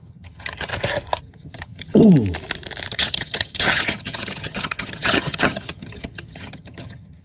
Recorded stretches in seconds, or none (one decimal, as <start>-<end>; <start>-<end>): 0.7-1.2; 2.1-2.9